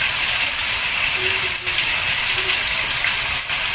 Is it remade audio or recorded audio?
recorded